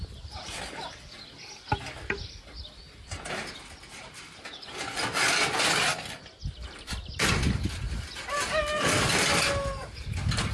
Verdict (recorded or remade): recorded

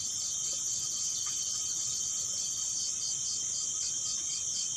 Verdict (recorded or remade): recorded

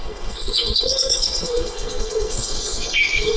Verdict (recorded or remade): remade